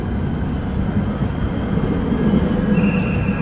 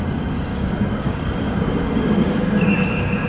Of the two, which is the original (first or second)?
first